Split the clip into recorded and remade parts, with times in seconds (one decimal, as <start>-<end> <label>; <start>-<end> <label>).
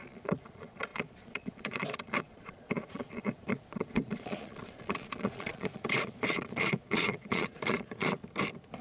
0.0-8.2 remade; 8.2-8.8 recorded